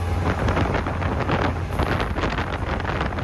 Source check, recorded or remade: recorded